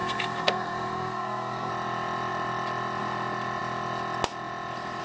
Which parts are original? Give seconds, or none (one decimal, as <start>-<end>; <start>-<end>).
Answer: 1.7-5.0